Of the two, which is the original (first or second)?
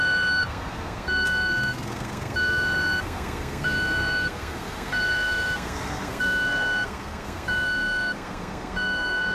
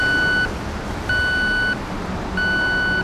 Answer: second